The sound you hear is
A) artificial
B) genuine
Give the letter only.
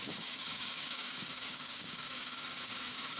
A